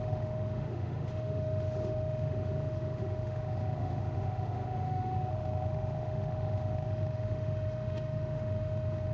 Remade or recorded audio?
remade